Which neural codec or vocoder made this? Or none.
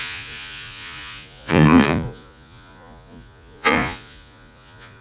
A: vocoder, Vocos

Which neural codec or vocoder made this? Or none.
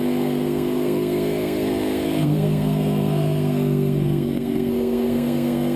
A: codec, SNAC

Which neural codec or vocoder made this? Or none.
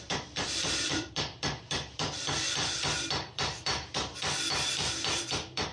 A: vocoder, BigVGAN v2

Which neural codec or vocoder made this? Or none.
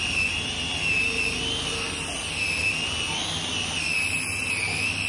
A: none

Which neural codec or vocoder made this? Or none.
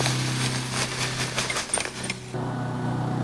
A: none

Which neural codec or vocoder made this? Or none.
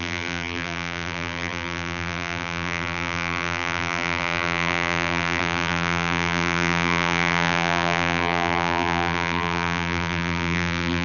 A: vocoder, BigVGAN v2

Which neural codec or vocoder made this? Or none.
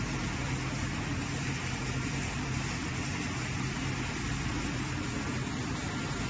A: none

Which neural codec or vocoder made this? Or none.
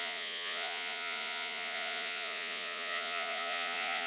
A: vocoder, Vocos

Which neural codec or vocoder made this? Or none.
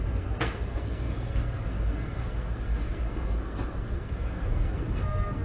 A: codec, SNAC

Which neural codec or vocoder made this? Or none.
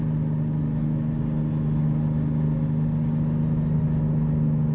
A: none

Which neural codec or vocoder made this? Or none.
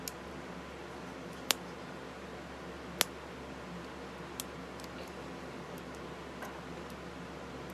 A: none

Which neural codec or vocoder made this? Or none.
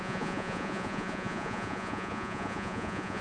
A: vocoder, Vocos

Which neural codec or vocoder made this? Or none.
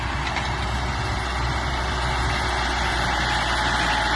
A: none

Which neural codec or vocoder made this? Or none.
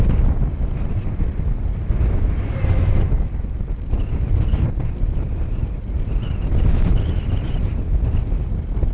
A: none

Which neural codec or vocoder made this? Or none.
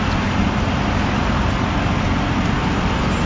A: none